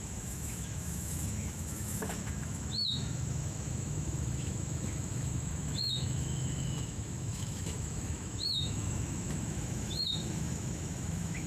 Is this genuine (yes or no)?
no